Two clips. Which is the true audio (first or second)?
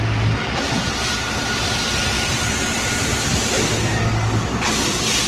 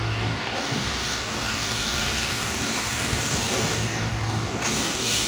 first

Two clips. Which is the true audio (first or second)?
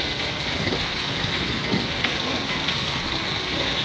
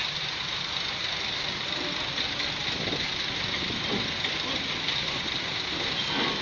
second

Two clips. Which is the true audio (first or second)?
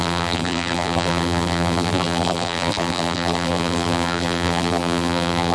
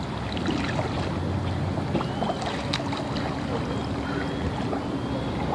second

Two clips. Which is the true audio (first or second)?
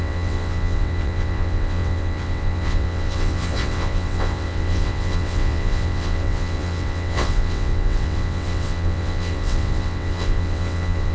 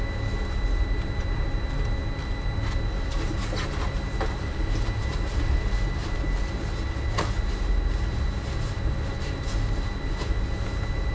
second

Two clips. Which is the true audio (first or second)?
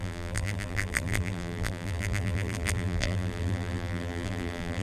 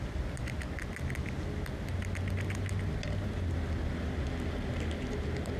second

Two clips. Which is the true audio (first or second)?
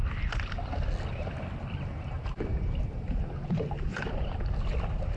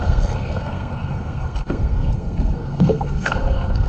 first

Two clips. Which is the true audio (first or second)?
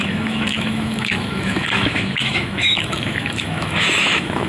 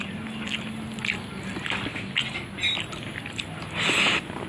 second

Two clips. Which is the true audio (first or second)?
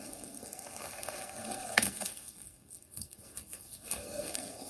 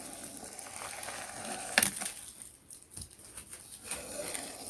second